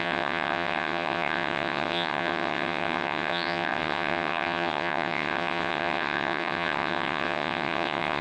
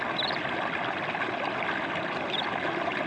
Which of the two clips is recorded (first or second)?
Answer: second